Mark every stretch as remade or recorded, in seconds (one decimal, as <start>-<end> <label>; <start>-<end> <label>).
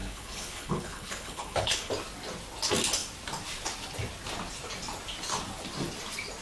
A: 0.0-1.9 remade; 1.9-6.4 recorded